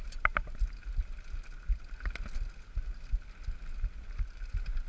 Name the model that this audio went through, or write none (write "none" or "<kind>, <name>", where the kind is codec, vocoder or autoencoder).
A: none